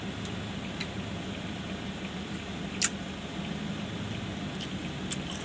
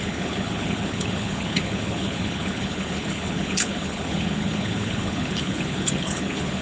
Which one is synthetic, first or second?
second